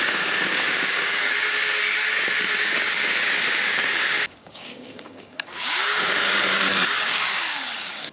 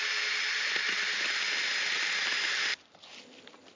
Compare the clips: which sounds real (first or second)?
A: second